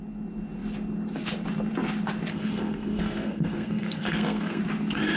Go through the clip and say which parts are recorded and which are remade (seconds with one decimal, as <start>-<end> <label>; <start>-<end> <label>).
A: 0.0-2.3 recorded; 2.3-4.6 remade; 4.6-5.2 recorded